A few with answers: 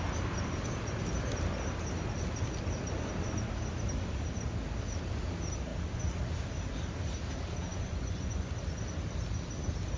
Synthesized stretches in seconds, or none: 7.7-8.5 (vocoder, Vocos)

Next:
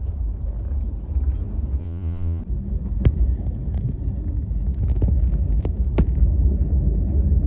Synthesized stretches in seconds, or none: 1.8-2.4 (vocoder, Vocos)

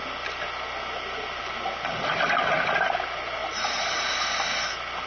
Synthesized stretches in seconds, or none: 3.4-4.1 (vocoder, Vocos)

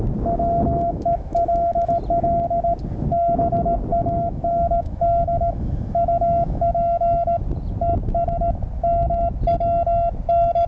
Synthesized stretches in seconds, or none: 0.7-2.0 (autoencoder, DAC-VAE); 3.9-7.4

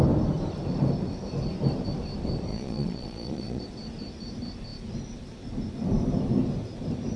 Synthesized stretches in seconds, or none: 2.5-3.6 (vocoder, Vocos)